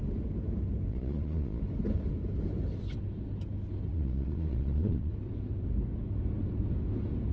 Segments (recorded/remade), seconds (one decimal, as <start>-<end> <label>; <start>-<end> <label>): 0.0-0.9 recorded; 0.9-1.6 remade; 1.6-3.9 recorded; 3.9-5.1 remade; 5.1-7.3 recorded